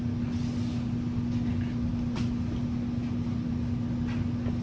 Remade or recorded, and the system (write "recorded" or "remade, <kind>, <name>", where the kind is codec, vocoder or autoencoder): recorded